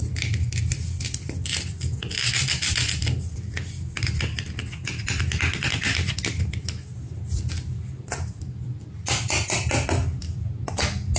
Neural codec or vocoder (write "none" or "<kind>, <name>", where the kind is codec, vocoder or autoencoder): none